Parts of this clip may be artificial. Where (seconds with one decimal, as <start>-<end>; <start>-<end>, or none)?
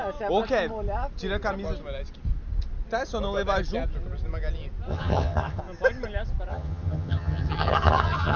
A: 4.9-5.6; 6.5-8.4